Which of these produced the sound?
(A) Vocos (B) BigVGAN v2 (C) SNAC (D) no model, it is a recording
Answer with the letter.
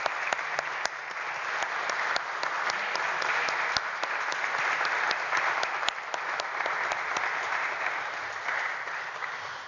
D